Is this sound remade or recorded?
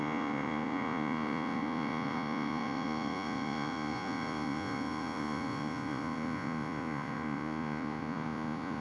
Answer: remade